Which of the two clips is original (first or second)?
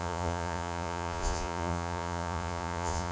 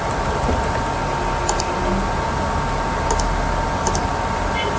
second